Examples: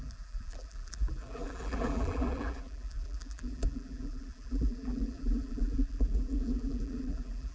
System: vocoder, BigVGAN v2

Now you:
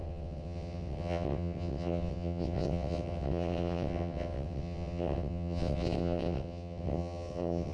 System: vocoder, WaveNeXt